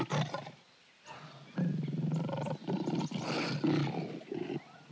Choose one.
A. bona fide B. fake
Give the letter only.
A